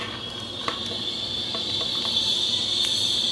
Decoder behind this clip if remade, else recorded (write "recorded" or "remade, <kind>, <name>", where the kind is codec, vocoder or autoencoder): remade, vocoder, BigVGAN v2